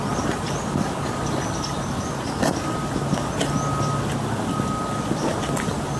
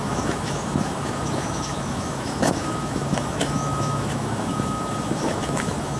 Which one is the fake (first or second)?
second